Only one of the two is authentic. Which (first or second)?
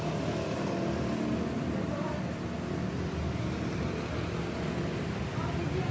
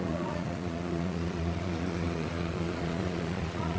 first